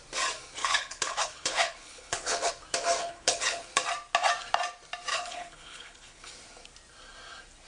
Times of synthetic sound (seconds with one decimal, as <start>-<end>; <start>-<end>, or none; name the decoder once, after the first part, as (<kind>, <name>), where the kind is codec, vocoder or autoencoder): 0.6-2.5 (codec, HILCodec); 3.0-3.7; 5.1-6.3

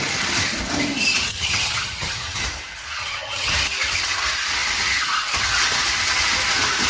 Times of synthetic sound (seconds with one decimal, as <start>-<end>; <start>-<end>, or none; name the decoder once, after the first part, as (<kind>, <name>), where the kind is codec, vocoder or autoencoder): 1.3-2.4 (vocoder, HiFi-GAN); 3.0-3.5

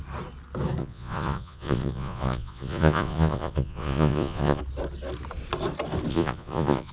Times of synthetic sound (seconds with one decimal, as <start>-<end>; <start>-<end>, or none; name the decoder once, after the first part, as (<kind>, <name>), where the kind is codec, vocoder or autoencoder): 0.8-4.6 (vocoder, Vocos); 6.1-6.9

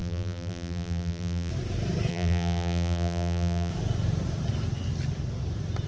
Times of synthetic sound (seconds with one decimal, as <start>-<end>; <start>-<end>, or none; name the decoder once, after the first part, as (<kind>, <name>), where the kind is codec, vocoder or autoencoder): 0.0-1.5 (vocoder, BigVGAN v2); 2.1-3.7

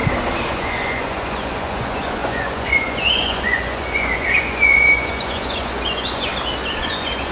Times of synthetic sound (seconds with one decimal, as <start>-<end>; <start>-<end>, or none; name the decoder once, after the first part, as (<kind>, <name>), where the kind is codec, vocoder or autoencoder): 0.5-6.3 (vocoder, Vocos); 6.8-7.3

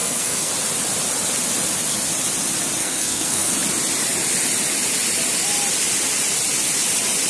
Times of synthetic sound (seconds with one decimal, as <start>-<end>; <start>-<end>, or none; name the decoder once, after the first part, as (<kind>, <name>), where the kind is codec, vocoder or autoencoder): 0.0-0.5 (codec, SNAC); 2.8-3.5